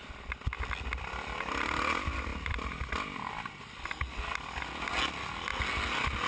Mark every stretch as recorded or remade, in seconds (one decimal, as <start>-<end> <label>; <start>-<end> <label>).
0.0-6.3 recorded